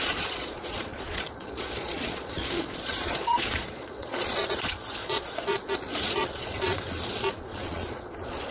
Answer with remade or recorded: remade